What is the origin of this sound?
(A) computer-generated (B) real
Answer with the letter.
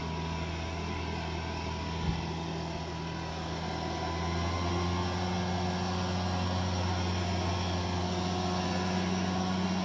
B